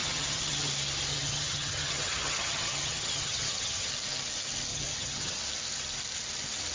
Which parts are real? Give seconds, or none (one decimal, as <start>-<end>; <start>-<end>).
0.7-1.1; 3.9-4.7; 5.4-6.7